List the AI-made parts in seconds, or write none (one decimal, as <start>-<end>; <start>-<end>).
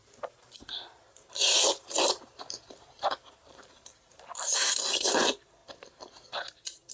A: 0.0-5.6